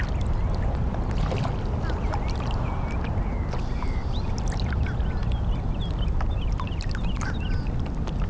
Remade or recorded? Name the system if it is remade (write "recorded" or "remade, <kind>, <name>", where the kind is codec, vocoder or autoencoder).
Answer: recorded